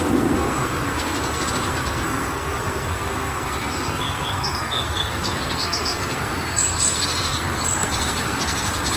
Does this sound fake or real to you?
fake